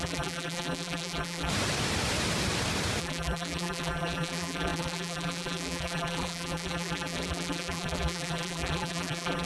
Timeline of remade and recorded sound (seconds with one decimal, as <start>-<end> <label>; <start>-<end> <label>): 0.0-1.5 remade; 1.5-3.0 recorded; 3.0-9.5 remade

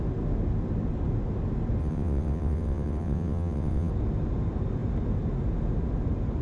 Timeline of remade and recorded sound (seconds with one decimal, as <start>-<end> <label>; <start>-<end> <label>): 0.0-1.8 recorded; 1.8-3.9 remade; 3.9-6.4 recorded